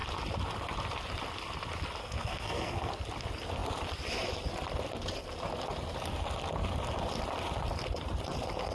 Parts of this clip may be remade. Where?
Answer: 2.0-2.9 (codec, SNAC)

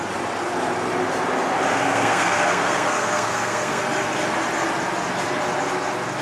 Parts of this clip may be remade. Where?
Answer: 1.7-3.8 (codec, SNAC)

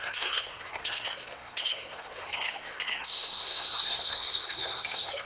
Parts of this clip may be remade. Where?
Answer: 0.0-5.2 (codec, SNAC)